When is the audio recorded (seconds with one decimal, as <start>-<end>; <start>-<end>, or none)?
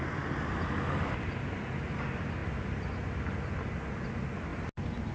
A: 0.0-5.1